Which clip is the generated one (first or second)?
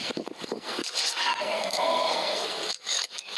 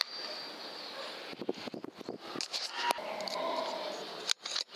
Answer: first